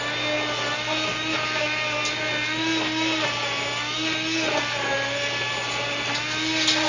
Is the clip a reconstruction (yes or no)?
no